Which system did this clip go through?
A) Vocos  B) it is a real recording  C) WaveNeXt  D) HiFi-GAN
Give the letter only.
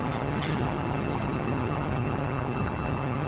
D